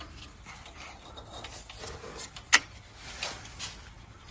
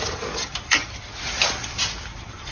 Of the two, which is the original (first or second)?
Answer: first